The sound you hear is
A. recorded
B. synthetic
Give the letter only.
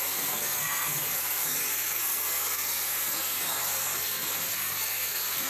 B